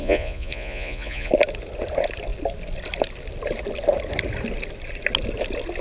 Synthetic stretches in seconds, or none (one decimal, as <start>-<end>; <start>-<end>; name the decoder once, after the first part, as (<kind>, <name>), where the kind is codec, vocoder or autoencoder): 0.0-1.3 (vocoder, Vocos)

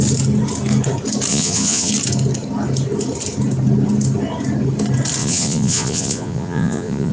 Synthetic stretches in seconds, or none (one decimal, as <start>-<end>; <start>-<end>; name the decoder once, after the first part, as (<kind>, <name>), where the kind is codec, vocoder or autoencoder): 1.3-1.9 (vocoder, Vocos); 5.2-7.1